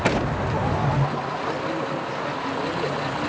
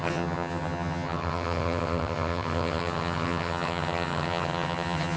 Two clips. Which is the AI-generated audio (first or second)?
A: second